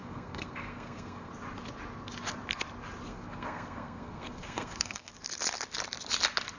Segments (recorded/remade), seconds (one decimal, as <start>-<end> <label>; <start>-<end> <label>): 0.0-1.3 remade; 1.3-3.1 recorded; 3.1-5.1 remade; 5.1-6.6 recorded